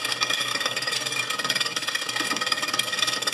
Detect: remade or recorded remade